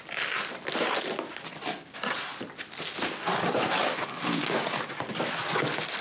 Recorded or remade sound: recorded